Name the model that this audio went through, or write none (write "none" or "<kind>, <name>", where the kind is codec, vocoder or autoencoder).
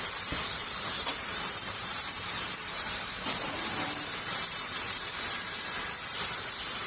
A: vocoder, BigVGAN v2